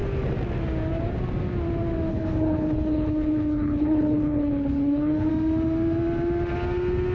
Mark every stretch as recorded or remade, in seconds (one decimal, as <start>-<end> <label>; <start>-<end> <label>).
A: 0.0-2.1 recorded; 2.1-5.3 remade; 5.3-7.1 recorded